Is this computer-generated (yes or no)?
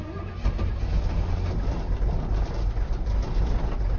no